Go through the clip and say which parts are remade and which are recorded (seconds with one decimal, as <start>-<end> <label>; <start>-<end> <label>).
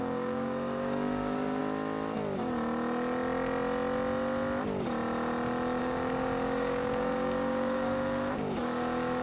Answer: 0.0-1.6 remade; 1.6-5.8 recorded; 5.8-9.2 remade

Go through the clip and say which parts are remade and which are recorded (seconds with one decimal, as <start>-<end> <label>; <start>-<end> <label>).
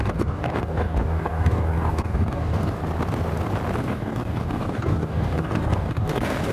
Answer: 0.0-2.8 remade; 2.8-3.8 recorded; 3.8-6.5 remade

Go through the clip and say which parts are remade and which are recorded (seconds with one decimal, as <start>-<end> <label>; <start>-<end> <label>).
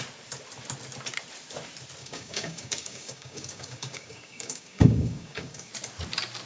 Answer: 0.0-2.0 recorded; 2.0-5.7 remade; 5.7-6.5 recorded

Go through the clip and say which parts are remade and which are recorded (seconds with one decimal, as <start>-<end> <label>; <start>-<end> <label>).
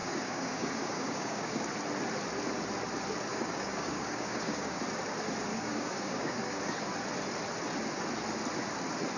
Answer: 0.0-1.6 remade; 1.6-3.3 recorded; 3.3-4.8 remade; 4.8-5.5 recorded; 5.5-6.6 remade; 6.6-9.2 recorded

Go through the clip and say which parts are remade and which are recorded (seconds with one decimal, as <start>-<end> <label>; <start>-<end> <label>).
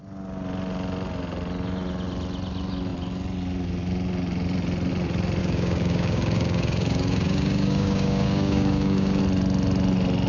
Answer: 0.0-5.4 recorded; 5.4-9.2 remade; 9.2-10.3 recorded